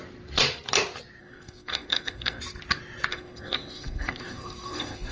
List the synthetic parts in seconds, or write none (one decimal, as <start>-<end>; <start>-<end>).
1.2-2.4; 3.1-5.1